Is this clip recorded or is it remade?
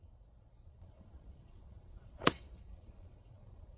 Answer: remade